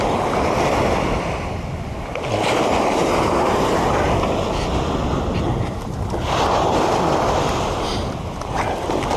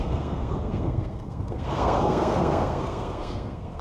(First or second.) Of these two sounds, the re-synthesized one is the second